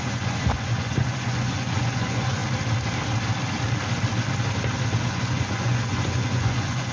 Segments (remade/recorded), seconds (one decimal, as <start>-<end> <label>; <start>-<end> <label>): 0.0-2.4 remade; 2.4-5.1 recorded; 5.1-6.9 remade